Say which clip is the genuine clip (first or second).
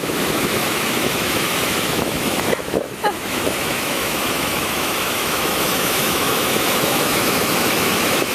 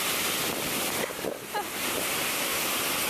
second